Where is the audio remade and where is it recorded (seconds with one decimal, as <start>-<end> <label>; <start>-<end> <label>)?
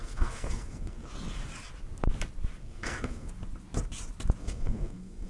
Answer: 0.0-1.1 remade; 1.1-2.6 recorded; 2.6-3.3 remade; 3.3-4.4 recorded; 4.4-5.3 remade